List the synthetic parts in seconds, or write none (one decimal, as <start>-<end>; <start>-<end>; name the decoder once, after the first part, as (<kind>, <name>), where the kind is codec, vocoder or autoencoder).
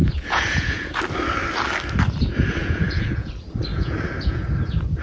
0.0-1.0 (vocoder, Vocos); 2.6-3.3; 3.7-4.5